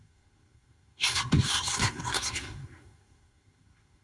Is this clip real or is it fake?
fake